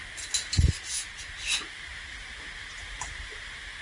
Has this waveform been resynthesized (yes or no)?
no